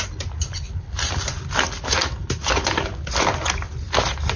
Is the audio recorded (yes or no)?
yes